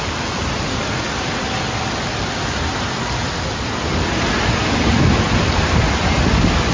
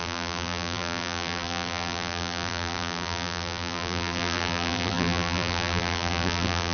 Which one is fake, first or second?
second